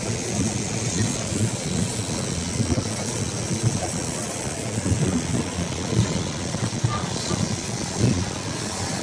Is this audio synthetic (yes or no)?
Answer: yes